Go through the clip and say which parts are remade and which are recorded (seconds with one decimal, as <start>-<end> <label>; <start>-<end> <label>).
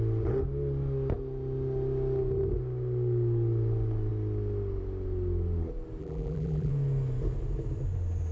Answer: 0.0-6.0 recorded; 6.0-6.7 remade; 6.7-8.3 recorded